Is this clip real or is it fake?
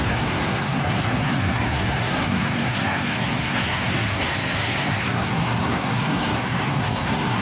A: fake